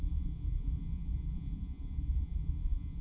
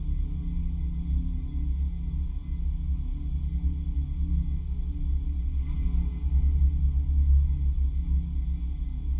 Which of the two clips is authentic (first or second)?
second